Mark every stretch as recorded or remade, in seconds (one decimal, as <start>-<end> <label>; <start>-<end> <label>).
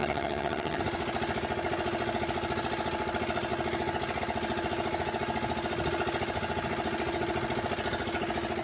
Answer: 0.0-0.8 remade; 0.8-8.6 recorded